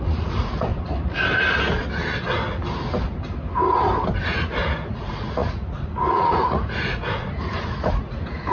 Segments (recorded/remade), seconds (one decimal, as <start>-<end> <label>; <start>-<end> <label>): 0.0-0.7 remade; 0.7-4.2 recorded; 4.2-8.5 remade